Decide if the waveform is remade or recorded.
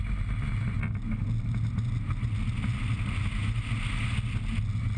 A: recorded